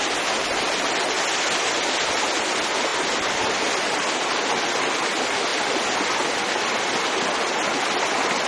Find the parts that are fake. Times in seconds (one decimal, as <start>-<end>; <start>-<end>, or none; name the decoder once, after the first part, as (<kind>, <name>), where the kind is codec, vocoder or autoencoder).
none